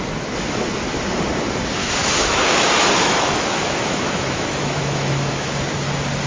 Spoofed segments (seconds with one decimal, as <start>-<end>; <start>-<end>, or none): 1.8-5.6